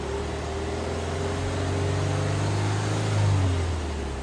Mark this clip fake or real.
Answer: real